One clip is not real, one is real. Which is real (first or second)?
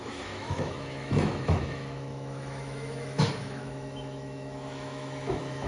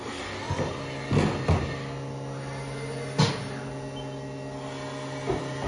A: second